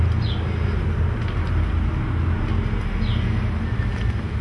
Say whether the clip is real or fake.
real